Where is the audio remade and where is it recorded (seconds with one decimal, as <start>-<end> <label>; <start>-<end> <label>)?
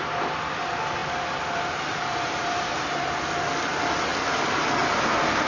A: 0.0-1.0 recorded; 1.0-3.2 remade; 3.2-5.5 recorded